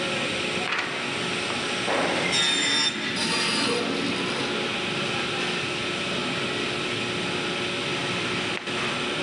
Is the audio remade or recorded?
recorded